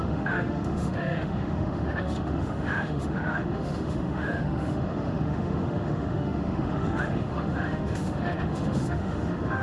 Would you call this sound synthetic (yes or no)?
yes